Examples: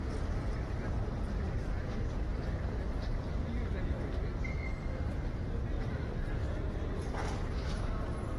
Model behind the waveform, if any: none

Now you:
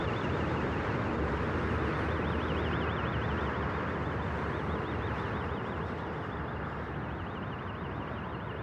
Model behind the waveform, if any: none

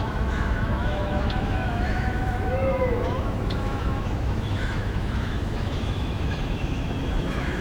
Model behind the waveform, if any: autoencoder, DAC-VAE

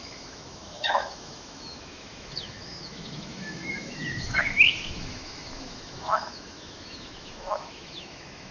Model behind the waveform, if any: autoencoder, DAC-VAE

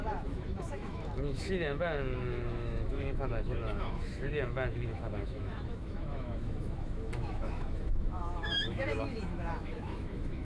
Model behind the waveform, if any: autoencoder, DAC-VAE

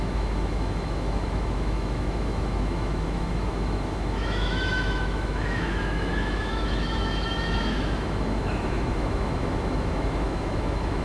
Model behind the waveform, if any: autoencoder, DAC-VAE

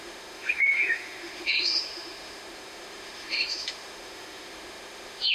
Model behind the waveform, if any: autoencoder, DAC-VAE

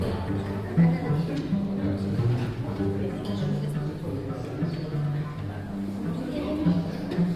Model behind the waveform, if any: none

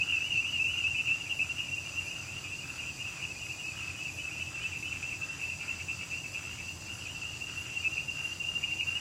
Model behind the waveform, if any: none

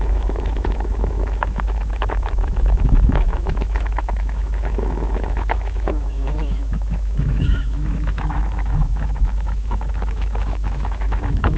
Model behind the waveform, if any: autoencoder, DAC-VAE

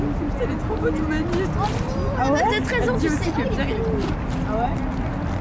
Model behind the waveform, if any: none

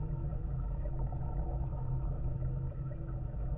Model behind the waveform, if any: autoencoder, DAC-VAE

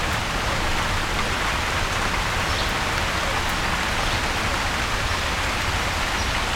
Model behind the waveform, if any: none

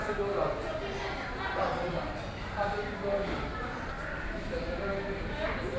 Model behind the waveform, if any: none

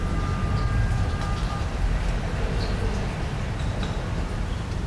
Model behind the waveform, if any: none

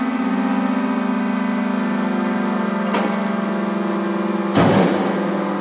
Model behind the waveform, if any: none